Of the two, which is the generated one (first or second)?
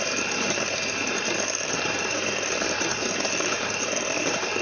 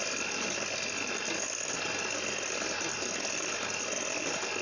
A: first